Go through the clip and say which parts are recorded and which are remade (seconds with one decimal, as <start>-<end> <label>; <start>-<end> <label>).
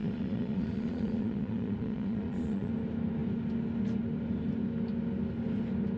0.0-2.7 remade; 2.7-6.0 recorded